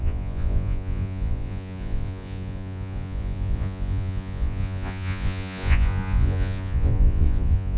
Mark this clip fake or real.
fake